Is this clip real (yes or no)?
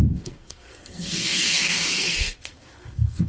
no